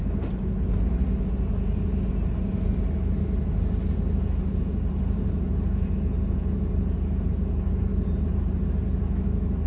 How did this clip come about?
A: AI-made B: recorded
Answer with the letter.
B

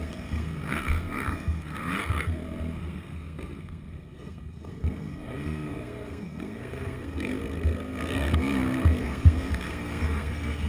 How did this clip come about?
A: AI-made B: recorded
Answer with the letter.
A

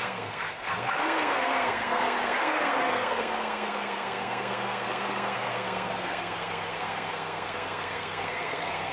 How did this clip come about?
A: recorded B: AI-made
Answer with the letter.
B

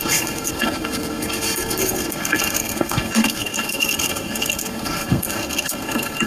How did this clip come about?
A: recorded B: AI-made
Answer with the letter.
B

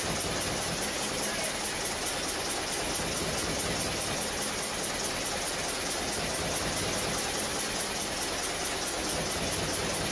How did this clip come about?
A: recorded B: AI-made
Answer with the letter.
A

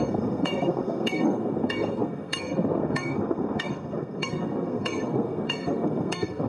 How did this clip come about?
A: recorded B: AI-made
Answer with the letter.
B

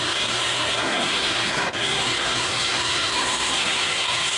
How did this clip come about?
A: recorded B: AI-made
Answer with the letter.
B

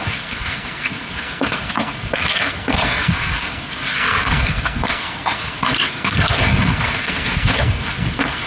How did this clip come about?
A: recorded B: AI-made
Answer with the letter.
B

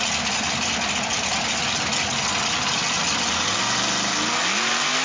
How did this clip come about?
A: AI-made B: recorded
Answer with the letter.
B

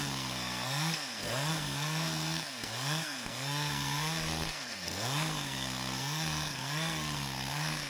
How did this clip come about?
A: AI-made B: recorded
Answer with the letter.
A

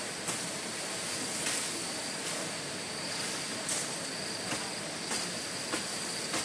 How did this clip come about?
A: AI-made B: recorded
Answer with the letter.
B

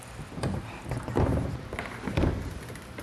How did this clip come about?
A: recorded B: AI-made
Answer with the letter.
A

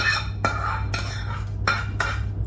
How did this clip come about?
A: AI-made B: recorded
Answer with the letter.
B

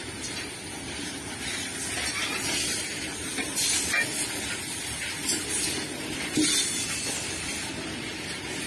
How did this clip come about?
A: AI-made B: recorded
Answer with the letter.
B